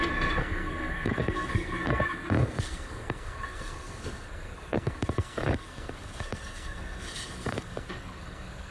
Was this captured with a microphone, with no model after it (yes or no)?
no